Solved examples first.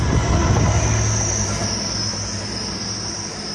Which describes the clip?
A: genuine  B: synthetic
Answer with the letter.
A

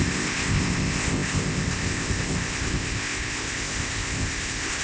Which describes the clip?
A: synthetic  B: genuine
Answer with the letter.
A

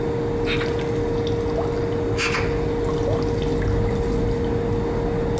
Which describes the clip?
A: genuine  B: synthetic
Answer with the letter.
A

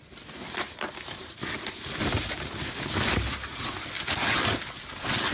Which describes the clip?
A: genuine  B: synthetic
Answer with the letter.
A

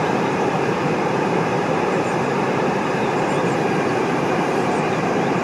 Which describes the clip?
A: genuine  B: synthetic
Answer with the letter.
B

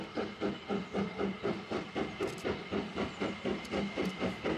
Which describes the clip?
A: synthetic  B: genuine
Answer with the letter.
B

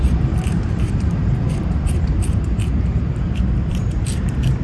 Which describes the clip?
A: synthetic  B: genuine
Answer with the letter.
A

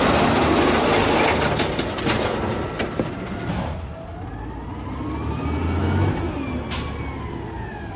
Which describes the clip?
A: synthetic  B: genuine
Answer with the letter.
B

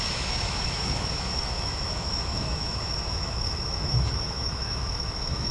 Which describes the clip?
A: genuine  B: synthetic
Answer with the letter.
B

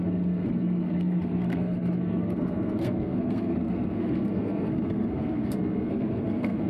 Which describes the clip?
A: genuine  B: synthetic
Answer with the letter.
B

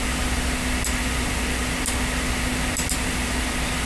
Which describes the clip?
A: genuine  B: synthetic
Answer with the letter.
A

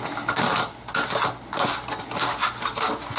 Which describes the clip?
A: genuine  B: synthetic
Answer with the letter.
A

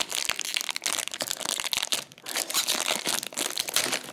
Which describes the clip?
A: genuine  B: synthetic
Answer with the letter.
A